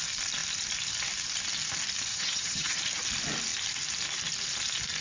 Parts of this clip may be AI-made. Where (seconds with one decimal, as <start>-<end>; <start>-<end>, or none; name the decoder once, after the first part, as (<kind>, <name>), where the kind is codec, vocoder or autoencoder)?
2.1-2.8 (vocoder, HiFi-GAN)